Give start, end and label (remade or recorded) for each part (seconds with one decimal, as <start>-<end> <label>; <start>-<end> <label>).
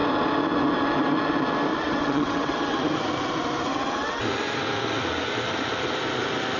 0.0-1.7 recorded; 1.7-2.9 remade; 2.9-3.7 recorded; 3.7-4.2 remade; 4.2-6.6 recorded